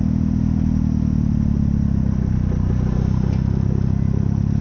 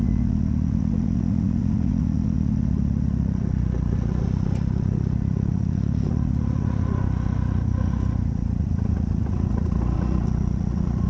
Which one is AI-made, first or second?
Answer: second